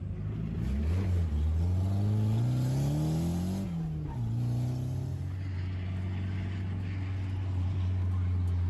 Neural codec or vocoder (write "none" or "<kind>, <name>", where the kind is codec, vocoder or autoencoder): none